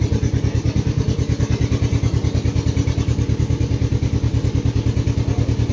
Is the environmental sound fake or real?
real